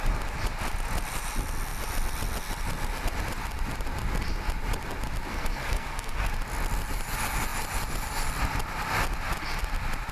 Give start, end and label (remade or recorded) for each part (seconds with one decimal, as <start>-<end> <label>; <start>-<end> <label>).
0.0-5.3 recorded; 5.3-6.3 remade; 6.3-10.1 recorded